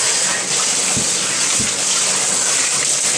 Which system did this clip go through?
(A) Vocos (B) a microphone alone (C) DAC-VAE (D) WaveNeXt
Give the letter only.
B